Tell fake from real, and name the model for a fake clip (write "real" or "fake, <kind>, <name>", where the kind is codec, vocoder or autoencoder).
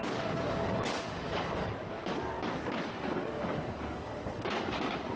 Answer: fake, codec, DAC